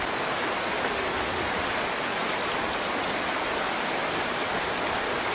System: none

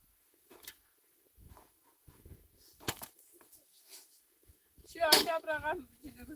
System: autoencoder, DAC-VAE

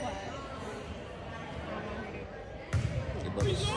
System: none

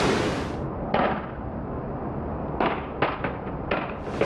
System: none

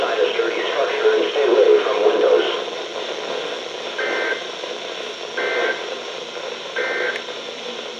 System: none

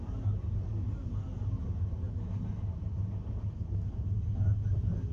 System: none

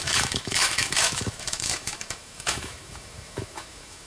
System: autoencoder, DAC-VAE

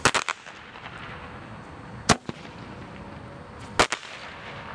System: none